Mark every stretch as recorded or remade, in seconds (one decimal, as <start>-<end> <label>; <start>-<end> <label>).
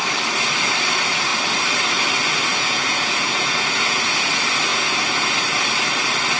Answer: 0.0-2.5 recorded; 2.5-4.3 remade; 4.3-4.7 recorded; 4.7-5.3 remade; 5.3-6.4 recorded